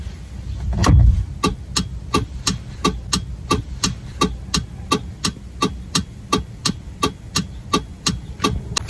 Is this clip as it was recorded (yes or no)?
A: yes